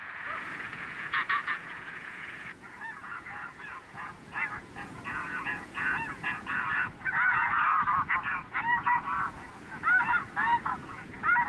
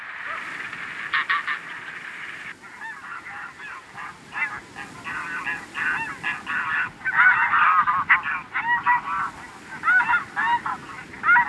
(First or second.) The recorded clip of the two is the second